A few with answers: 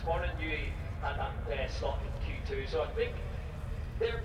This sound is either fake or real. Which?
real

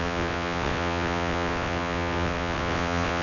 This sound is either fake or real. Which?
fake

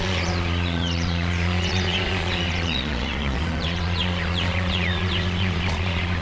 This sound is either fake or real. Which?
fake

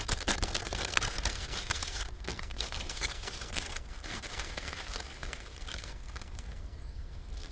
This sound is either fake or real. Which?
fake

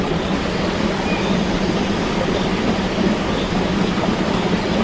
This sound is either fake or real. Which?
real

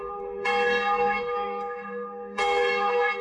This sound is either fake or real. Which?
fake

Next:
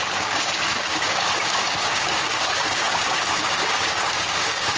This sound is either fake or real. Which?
fake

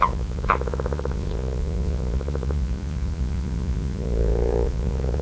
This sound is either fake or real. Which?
fake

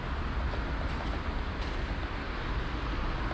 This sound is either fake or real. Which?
real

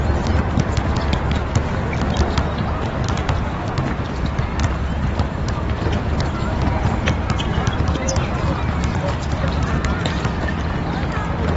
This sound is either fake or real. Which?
real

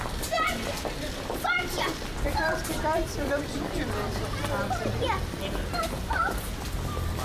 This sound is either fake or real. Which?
fake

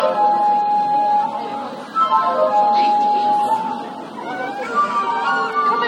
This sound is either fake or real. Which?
real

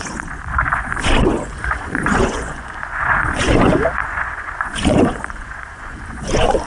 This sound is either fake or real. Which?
fake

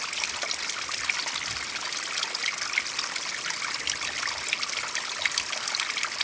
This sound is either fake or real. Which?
real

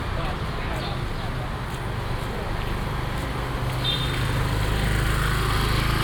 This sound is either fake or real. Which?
real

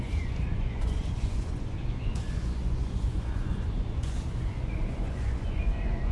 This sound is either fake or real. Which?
fake